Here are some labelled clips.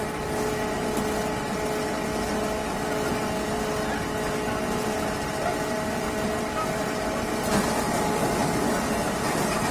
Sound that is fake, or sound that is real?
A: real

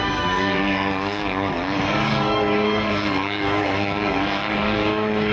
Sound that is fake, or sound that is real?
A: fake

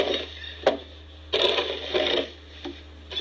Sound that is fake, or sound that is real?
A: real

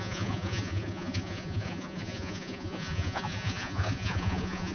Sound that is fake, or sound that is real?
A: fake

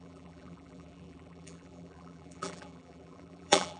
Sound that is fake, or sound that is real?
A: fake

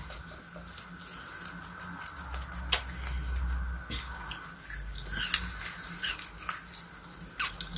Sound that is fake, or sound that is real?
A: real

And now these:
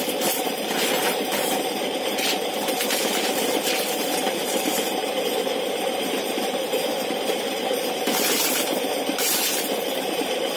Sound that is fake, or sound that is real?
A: fake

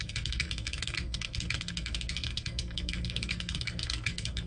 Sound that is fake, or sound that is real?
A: fake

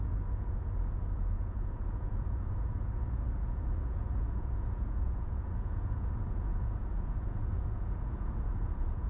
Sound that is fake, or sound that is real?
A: fake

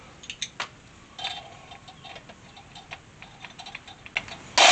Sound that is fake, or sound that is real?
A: real